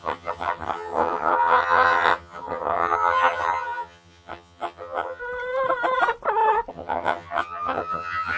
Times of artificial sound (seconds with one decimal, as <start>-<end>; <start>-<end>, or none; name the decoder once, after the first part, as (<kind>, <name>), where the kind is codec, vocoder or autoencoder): 0.0-5.2 (vocoder, HiFi-GAN); 6.7-8.4

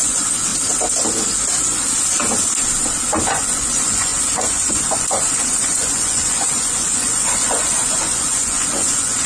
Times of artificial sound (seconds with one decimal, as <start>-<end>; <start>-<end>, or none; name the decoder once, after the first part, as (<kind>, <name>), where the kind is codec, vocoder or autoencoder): 0.0-0.5 (vocoder, Vocos); 3.2-9.3

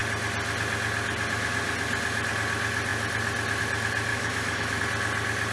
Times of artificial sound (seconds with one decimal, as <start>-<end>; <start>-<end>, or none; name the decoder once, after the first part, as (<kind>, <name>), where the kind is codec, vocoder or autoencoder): 4.1-4.8 (autoencoder, DAC-VAE)

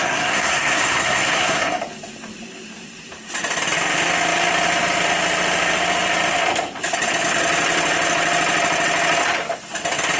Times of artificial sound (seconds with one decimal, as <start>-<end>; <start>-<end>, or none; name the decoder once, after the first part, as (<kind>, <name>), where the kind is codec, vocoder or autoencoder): 0.0-1.8 (codec, SNAC)